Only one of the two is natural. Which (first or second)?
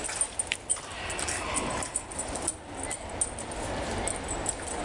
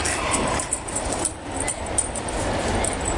first